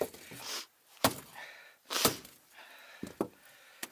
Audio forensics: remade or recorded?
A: recorded